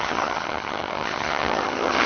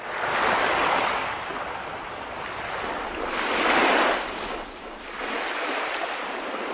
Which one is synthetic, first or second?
first